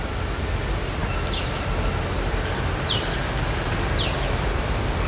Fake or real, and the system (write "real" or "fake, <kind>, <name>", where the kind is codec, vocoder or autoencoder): real